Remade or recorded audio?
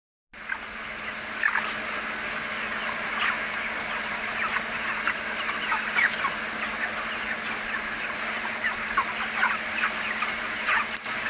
recorded